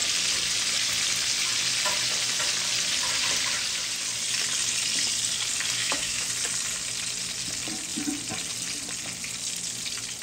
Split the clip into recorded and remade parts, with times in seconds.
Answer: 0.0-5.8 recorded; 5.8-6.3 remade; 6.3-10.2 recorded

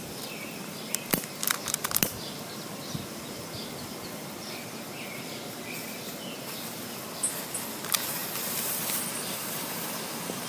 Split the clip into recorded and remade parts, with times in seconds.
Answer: 0.0-10.5 recorded

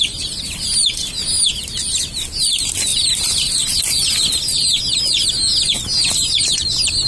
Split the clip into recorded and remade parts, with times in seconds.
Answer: 0.0-2.9 recorded; 2.9-3.8 remade; 3.8-7.1 recorded

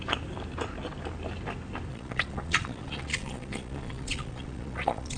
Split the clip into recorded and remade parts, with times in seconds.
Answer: 0.0-1.9 recorded; 1.9-5.2 remade

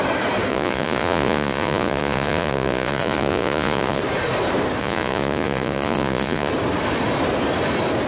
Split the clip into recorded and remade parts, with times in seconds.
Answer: 0.0-0.5 recorded; 0.5-4.0 remade; 4.0-4.8 recorded; 4.8-6.5 remade; 6.5-8.1 recorded

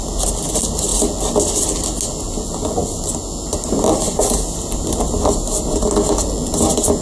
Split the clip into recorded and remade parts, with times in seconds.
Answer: 0.0-3.5 recorded; 3.5-5.9 remade; 5.9-7.0 recorded